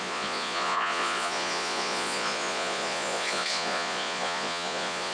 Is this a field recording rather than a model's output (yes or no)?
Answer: no